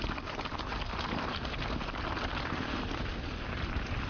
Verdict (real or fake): real